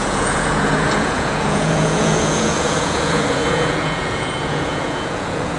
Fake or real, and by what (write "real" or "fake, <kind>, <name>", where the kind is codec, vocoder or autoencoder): fake, vocoder, Vocos